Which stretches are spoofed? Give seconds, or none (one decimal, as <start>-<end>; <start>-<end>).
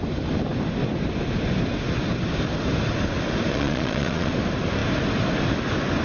3.5-4.3